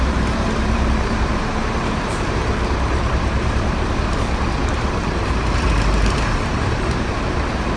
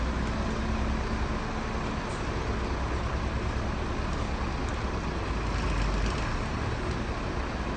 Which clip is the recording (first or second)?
second